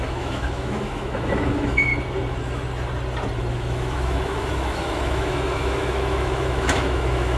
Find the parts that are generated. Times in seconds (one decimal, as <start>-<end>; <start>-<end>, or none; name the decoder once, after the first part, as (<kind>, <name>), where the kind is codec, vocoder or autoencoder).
0.0-1.9 (autoencoder, DAC-VAE); 3.5-7.4